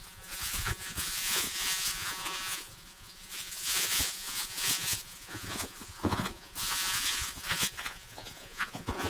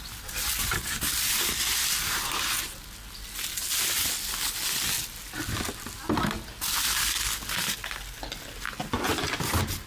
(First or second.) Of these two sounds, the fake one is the first